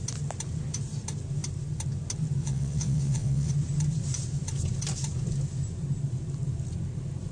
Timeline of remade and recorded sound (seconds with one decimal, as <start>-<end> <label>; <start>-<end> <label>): 0.0-2.4 recorded; 2.4-3.5 remade; 3.5-7.3 recorded

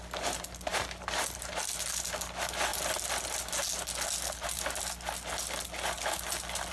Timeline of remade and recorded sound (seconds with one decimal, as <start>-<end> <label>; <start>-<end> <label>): 0.0-6.7 recorded

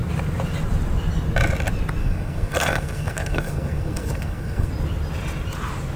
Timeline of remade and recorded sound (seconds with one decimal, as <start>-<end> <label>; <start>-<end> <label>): 0.0-2.0 recorded; 2.0-4.7 remade; 4.7-6.0 recorded

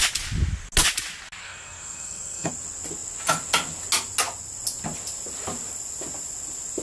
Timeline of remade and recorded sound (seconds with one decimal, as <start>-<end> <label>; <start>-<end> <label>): 0.0-1.4 recorded; 1.4-2.5 remade; 2.5-6.8 recorded

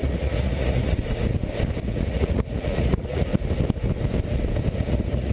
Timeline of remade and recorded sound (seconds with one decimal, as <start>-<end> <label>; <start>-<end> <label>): 0.0-1.0 remade; 1.0-1.8 recorded; 1.8-3.3 remade; 3.3-4.8 recorded; 4.8-5.3 remade